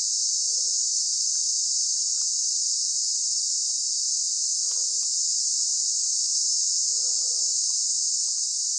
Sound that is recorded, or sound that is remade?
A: recorded